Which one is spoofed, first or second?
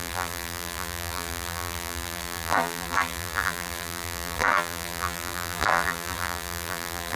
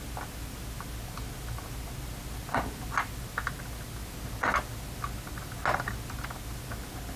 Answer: first